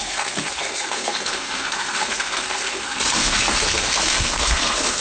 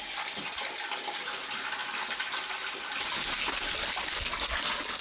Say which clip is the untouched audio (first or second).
second